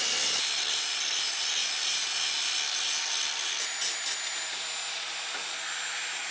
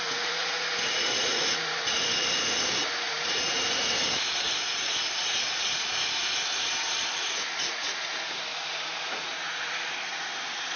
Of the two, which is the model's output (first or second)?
second